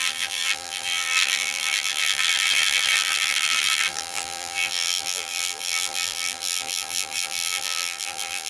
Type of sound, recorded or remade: remade